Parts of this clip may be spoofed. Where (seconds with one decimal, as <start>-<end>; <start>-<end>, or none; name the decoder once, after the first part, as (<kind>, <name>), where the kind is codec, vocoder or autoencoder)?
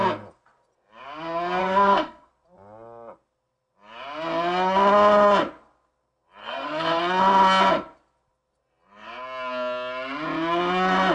1.6-2.3 (codec, SNAC); 6.4-7.0